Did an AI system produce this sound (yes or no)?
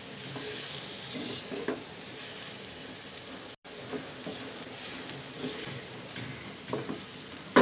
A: no